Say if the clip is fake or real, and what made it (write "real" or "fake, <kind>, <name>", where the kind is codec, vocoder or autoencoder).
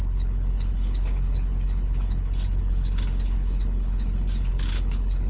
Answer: fake, codec, HILCodec